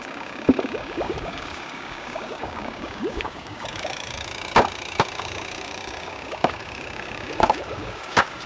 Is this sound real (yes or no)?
no